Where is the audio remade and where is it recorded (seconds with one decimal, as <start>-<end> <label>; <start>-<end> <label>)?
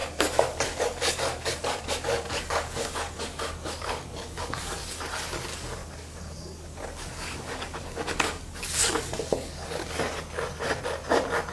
0.0-5.0 remade; 5.0-5.5 recorded; 5.5-10.0 remade; 10.0-11.5 recorded